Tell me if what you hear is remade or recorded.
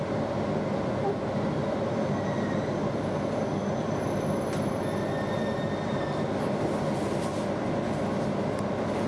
recorded